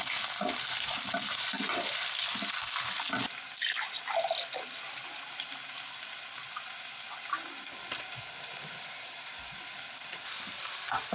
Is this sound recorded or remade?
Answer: recorded